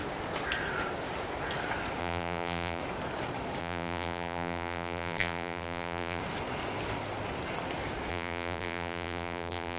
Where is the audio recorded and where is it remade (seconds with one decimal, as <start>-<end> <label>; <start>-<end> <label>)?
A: 0.0-2.0 recorded; 2.0-2.8 remade; 2.8-3.6 recorded; 3.6-6.2 remade; 6.2-8.1 recorded; 8.1-9.8 remade